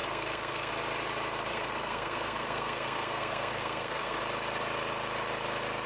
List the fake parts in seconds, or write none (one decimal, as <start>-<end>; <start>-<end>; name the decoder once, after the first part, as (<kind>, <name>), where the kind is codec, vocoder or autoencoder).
0.0-0.7 (codec, SNAC); 1.5-4.2